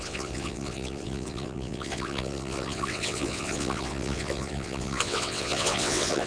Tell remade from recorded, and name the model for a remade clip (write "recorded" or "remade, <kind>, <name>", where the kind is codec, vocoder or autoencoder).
remade, vocoder, WaveNeXt